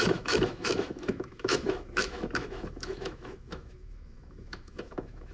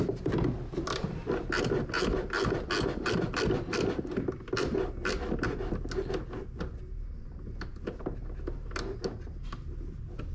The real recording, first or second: second